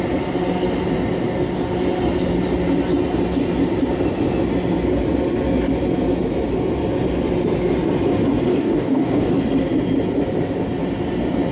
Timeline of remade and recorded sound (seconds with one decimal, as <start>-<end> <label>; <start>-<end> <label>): 0.0-8.5 recorded; 8.5-9.3 remade; 9.3-11.5 recorded

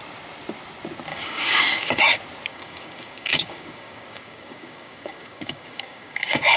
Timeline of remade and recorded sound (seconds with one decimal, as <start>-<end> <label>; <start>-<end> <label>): 0.0-1.1 recorded; 1.1-2.0 remade; 2.0-2.5 recorded; 2.5-6.6 remade

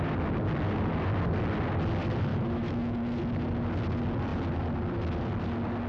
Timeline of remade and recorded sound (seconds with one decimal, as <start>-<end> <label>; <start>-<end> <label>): 0.0-2.3 recorded; 2.3-3.2 remade; 3.2-5.9 recorded

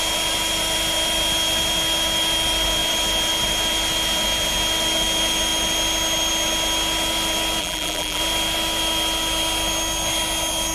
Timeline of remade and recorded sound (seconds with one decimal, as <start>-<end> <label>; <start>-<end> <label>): 0.0-7.6 recorded; 7.6-8.2 remade; 8.2-10.7 recorded

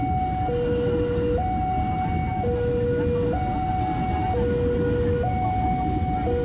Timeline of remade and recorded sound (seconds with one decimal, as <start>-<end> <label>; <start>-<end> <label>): 0.0-6.4 recorded

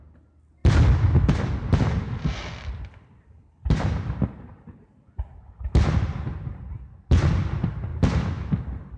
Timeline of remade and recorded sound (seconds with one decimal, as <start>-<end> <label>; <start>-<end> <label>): 0.0-9.0 recorded